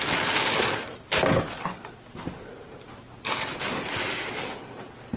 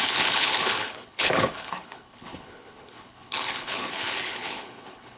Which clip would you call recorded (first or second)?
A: first